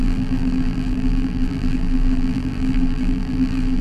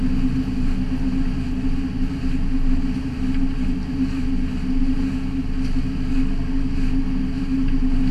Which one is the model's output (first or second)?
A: first